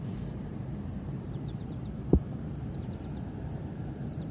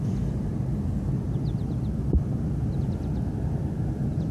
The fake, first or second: first